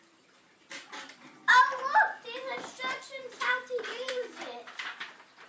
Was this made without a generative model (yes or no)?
no